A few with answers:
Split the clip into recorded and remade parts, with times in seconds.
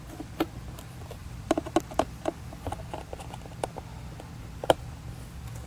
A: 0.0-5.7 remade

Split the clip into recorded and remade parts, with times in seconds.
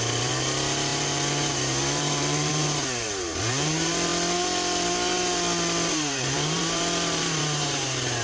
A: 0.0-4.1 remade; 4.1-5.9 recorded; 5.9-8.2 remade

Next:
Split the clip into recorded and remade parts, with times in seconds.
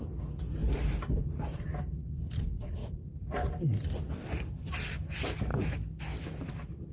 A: 0.0-2.8 recorded; 2.8-3.5 remade; 3.5-6.9 recorded